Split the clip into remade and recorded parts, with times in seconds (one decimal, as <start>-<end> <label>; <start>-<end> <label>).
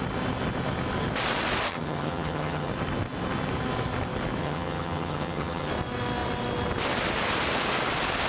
0.0-1.7 recorded; 1.7-2.7 remade; 2.7-4.4 recorded; 4.4-5.7 remade; 5.7-8.3 recorded